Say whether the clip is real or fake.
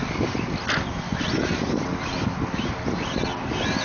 real